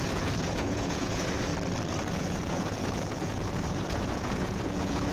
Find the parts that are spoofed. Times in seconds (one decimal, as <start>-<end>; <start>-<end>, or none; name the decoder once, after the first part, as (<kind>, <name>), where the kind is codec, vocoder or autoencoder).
0.0-1.5 (vocoder, Vocos); 2.1-5.1